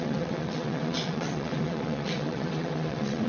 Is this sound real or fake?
fake